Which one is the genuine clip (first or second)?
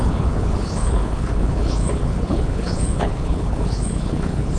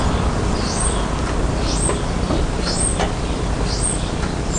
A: second